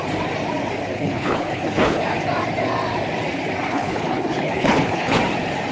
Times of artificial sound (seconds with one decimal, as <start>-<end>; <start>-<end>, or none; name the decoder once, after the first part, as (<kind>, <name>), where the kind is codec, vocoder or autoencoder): 0.9-2.0 (codec, HILCodec); 3.7-5.2